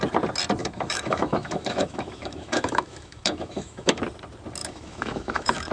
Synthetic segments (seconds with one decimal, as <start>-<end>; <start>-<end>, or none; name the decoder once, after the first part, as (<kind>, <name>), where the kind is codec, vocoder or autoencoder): 0.6-4.0 (autoencoder, DAC-VAE); 4.6-5.7